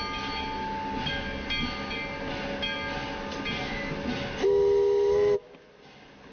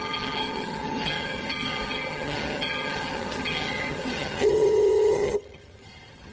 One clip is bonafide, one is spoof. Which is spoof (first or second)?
second